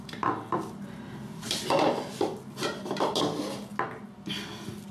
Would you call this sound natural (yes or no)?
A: yes